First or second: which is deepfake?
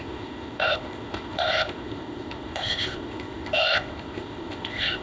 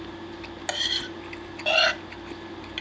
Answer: first